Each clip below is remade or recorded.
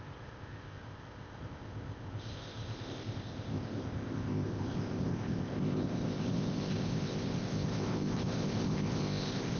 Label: remade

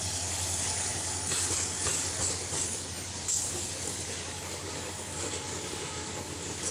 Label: remade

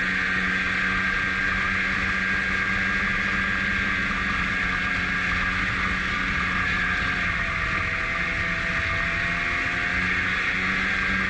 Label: recorded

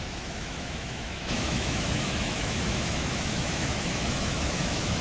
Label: remade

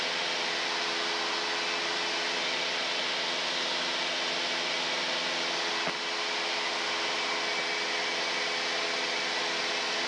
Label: recorded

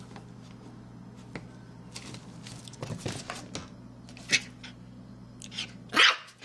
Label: recorded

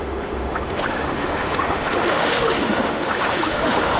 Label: remade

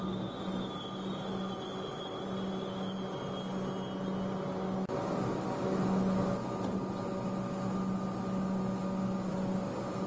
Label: recorded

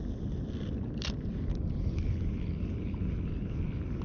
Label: recorded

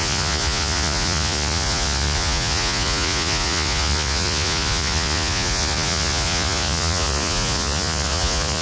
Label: remade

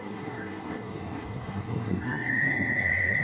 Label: remade